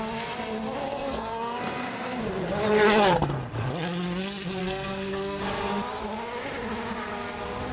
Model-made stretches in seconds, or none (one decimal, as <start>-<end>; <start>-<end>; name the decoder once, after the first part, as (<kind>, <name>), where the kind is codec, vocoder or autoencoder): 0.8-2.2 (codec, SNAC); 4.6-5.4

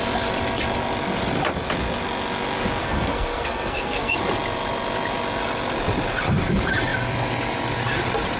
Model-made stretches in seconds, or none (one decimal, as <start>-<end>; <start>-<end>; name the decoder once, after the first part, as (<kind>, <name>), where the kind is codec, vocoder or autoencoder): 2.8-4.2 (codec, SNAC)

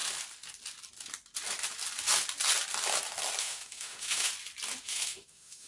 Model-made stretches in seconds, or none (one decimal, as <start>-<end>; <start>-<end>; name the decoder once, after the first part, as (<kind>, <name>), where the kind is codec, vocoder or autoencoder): 3.4-4.3 (autoencoder, DAC-VAE); 4.8-5.7